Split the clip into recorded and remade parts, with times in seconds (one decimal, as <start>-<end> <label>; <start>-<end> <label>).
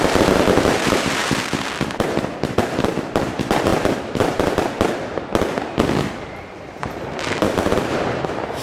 0.0-5.3 remade; 5.3-6.2 recorded; 6.2-8.6 remade